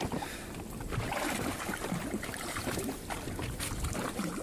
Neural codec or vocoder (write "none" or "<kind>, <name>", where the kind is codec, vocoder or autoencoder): vocoder, BigVGAN v2